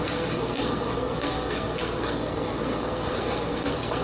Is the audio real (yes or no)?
no